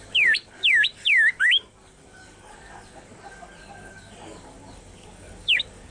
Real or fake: fake